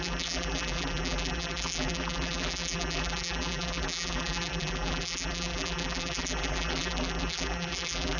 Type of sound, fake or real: fake